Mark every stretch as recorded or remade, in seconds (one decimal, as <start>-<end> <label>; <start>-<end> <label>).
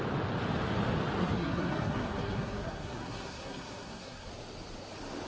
0.0-1.2 recorded; 1.2-4.3 remade; 4.3-5.3 recorded